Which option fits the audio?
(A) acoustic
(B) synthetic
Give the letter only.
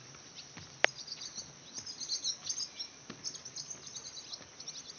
A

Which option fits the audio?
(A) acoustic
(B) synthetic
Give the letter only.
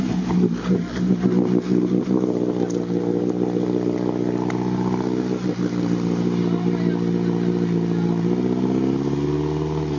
A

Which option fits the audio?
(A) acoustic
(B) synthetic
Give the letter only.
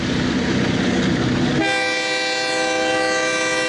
A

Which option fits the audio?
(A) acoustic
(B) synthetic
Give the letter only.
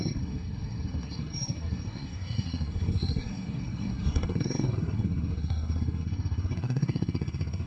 B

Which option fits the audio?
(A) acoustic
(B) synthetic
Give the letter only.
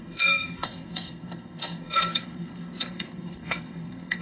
B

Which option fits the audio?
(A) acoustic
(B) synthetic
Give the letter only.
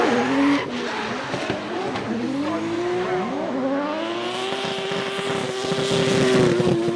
A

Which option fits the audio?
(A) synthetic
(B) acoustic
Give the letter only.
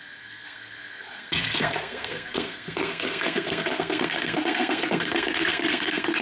A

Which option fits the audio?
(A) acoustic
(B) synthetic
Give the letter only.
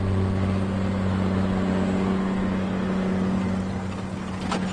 A